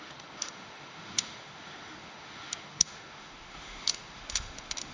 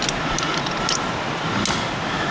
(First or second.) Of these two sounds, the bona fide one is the second